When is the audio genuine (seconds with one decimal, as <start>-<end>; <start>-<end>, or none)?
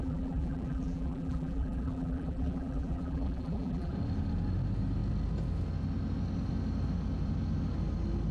3.9-8.3